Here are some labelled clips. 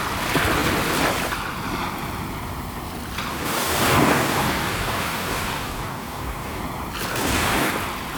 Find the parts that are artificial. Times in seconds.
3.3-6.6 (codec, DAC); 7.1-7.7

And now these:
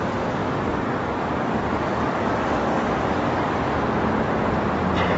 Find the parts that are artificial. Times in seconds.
0.4-3.5 (codec, DAC)

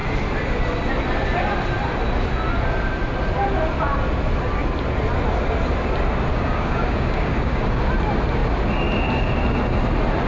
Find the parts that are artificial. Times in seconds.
6.3-7.8 (codec, DAC)